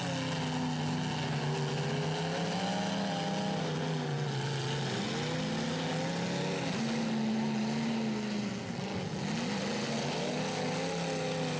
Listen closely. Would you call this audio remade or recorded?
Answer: recorded